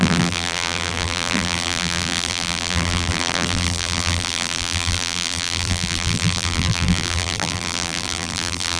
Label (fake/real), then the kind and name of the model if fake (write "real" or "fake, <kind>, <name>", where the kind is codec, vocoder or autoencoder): fake, vocoder, BigVGAN v2